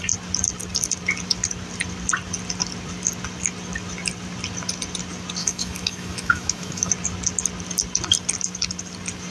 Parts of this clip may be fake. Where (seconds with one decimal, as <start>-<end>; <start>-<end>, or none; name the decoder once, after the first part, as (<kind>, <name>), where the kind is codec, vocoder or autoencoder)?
5.4-6.9 (autoencoder, DAC-VAE)